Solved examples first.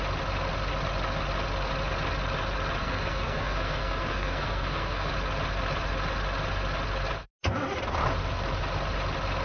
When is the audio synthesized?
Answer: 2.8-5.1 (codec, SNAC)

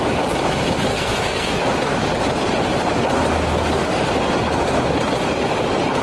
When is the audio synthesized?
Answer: 0.9-1.5 (codec, SNAC)

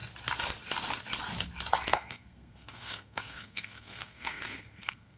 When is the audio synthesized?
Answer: 1.9-5.2 (codec, SNAC)

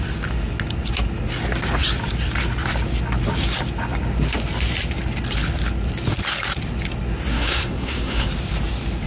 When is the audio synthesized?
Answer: 7.3-8.3 (codec, SNAC)

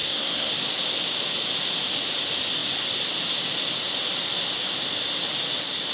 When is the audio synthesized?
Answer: 0.0-0.5 (codec, SNAC)